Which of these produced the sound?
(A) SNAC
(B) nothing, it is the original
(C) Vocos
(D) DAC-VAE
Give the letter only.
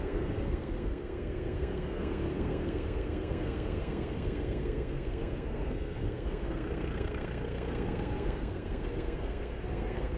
A